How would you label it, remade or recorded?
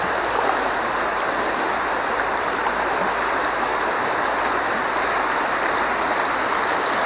recorded